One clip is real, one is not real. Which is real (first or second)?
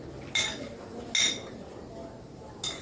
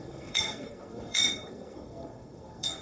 first